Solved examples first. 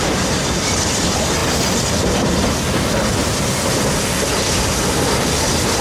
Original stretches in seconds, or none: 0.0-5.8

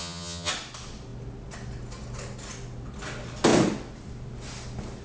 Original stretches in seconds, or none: 0.5-5.0

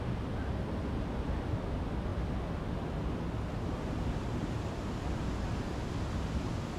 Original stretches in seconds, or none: 0.0-6.8

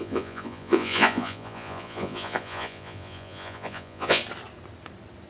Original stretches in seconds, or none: 4.2-5.3

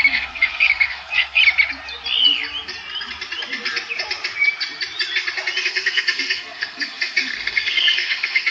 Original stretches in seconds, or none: 1.4-5.6

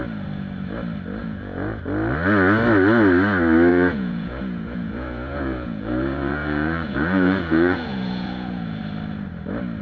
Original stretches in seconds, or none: 0.0-1.2; 1.8-3.7; 8.8-9.8

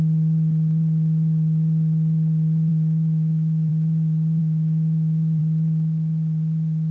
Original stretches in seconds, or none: 0.0-2.7; 3.7-4.4; 5.4-6.9